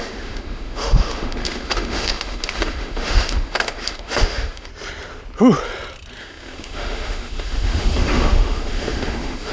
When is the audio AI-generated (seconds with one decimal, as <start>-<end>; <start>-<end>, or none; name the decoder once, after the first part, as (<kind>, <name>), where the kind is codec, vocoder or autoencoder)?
0.0-4.7 (autoencoder, DAC-VAE); 6.2-9.5